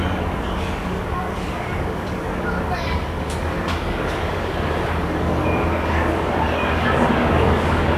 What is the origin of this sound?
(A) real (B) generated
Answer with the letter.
B